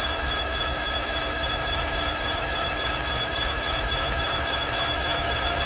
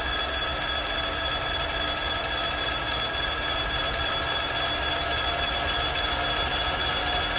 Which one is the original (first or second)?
second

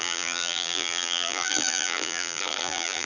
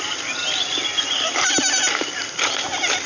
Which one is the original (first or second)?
second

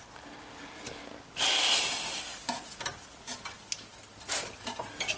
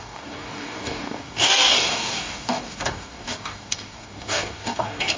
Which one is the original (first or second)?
first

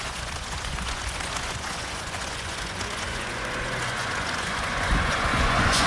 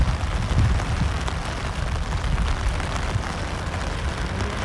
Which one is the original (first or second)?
second